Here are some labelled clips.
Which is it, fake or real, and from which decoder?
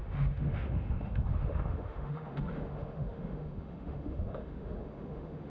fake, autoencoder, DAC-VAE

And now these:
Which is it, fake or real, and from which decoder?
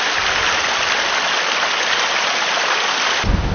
real